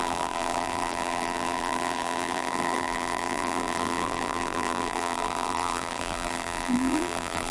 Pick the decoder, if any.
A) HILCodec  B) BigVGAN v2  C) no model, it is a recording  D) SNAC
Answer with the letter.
B